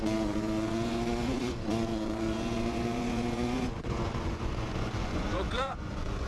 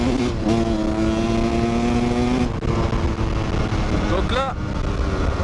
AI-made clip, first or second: first